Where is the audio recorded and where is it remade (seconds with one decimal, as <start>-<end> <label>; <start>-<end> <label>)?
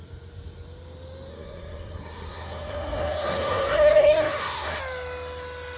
0.0-1.3 recorded; 1.3-4.8 remade; 4.8-5.8 recorded